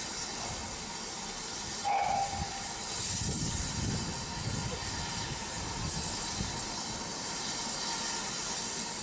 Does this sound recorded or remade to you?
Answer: recorded